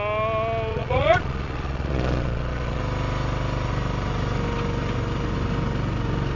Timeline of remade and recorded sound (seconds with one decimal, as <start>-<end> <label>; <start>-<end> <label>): 0.0-0.7 recorded; 0.7-2.8 remade; 2.8-6.4 recorded